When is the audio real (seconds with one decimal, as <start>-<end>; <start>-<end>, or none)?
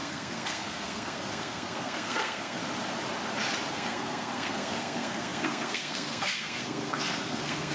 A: 2.6-3.7